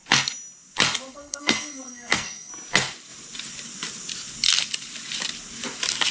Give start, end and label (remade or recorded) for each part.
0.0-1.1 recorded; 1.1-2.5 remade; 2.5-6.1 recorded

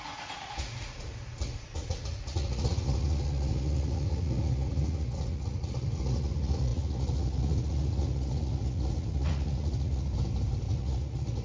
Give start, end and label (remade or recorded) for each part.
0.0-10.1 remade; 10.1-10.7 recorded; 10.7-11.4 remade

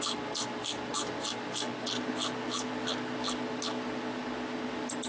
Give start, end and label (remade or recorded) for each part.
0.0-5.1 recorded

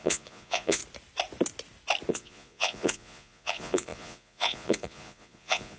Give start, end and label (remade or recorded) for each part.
0.0-0.8 remade; 0.8-2.1 recorded; 2.1-5.8 remade